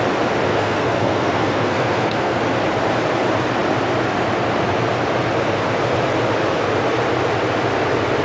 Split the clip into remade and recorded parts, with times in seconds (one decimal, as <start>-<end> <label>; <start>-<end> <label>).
0.0-0.5 recorded; 0.5-2.4 remade; 2.4-8.2 recorded